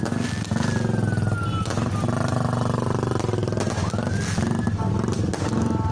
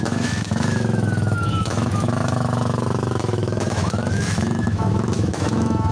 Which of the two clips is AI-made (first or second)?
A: second